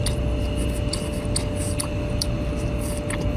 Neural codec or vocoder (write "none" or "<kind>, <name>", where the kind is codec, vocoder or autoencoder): none